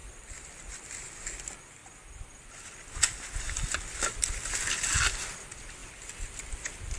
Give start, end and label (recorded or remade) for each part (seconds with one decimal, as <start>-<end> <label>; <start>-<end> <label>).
0.0-7.0 recorded

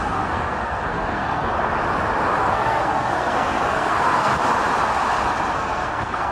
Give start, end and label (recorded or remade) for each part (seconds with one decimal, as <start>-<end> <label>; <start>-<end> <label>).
0.0-1.5 remade; 1.5-2.4 recorded; 2.4-4.3 remade; 4.3-5.5 recorded; 5.5-6.3 remade

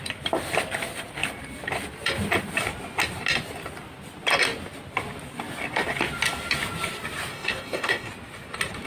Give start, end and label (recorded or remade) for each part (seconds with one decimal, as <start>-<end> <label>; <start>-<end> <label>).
0.0-7.3 recorded; 7.3-8.1 remade; 8.1-8.9 recorded

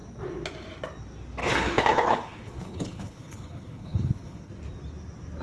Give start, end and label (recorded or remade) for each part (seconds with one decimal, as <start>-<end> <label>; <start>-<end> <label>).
0.0-1.4 recorded; 1.4-4.5 remade; 4.5-5.4 recorded

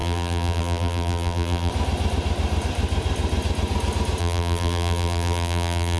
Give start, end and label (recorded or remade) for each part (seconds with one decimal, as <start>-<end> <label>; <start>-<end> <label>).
0.0-1.7 remade; 1.7-4.2 recorded; 4.2-6.0 remade

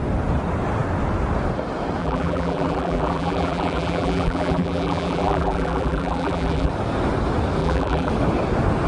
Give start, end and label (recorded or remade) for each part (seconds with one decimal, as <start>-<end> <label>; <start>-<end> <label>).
0.0-2.0 recorded; 2.0-6.7 remade; 6.7-7.6 recorded; 7.6-8.1 remade; 8.1-8.9 recorded

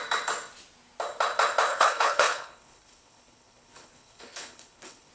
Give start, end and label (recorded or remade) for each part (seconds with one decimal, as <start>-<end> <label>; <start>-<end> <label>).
0.0-1.7 recorded; 1.7-5.1 remade

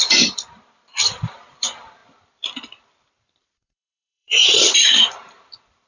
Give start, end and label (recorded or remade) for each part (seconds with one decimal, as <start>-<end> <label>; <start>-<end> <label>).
0.0-5.9 remade